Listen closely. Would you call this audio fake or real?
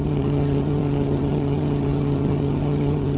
fake